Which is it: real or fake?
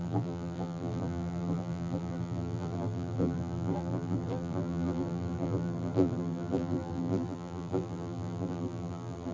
fake